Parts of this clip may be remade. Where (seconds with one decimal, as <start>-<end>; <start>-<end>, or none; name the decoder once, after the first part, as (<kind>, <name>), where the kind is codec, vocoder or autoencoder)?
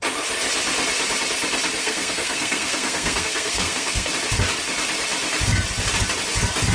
1.8-4.1 (codec, SNAC)